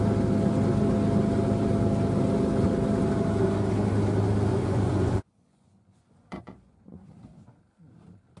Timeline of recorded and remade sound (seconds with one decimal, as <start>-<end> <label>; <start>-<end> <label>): 0.0-4.5 recorded; 4.5-7.1 remade; 7.1-8.4 recorded